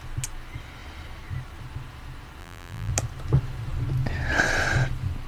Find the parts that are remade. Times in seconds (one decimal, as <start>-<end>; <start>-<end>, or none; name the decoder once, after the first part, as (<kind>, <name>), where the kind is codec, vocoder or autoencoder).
2.4-2.9 (vocoder, BigVGAN v2)